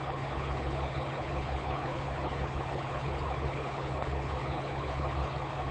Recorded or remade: remade